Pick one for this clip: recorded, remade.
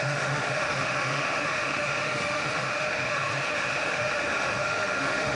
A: remade